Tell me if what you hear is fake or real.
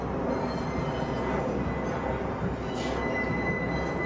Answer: real